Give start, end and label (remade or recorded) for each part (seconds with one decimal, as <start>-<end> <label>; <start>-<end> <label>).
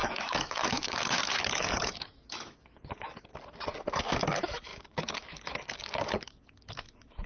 0.0-3.3 remade; 3.3-3.9 recorded; 3.9-7.3 remade